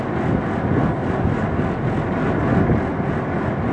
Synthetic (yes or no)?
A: no